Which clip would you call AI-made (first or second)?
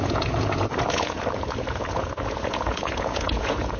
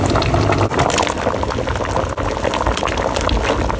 first